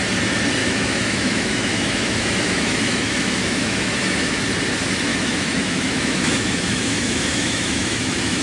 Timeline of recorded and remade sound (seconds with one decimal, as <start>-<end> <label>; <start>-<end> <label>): 0.0-0.6 recorded; 0.6-4.4 remade; 4.4-5.1 recorded; 5.1-8.4 remade